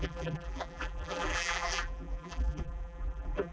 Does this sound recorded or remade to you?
remade